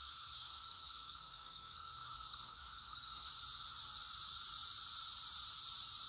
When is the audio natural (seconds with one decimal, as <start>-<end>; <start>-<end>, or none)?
3.3-6.1